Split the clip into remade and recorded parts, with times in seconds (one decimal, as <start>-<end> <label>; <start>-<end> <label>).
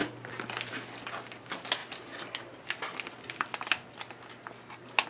0.0-5.1 recorded